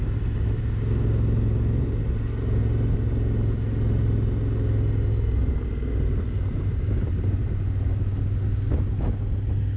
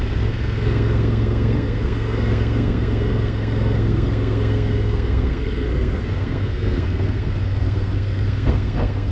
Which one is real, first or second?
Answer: first